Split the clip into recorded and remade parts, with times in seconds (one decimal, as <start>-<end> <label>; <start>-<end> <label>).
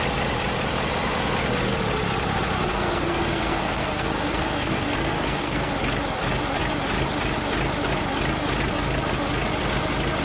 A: 0.0-2.7 recorded; 2.7-5.7 remade; 5.7-10.2 recorded